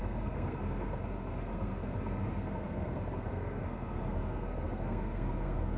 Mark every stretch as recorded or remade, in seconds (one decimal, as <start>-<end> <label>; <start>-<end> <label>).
0.0-5.8 remade